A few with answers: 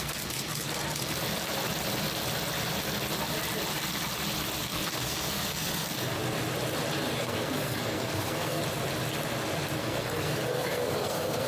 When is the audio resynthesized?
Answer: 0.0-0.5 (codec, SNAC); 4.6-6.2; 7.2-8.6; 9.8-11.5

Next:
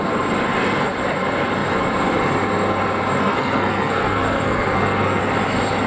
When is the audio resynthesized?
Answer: 3.2-5.2 (codec, SNAC)